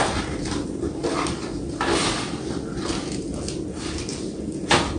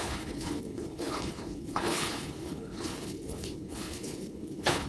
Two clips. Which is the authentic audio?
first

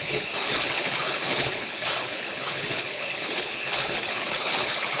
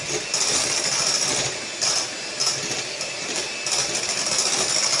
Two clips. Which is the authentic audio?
second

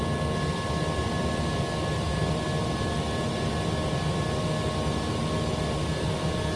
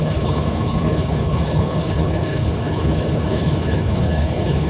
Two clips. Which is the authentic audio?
first